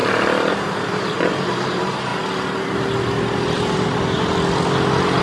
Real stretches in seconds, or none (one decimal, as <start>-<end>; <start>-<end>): 0.0-0.5; 2.1-5.2